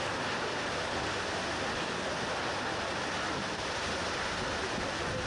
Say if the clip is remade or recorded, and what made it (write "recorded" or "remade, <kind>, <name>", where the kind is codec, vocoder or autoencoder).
recorded